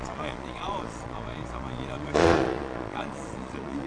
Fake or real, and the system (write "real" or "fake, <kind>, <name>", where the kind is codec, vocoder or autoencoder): fake, vocoder, Vocos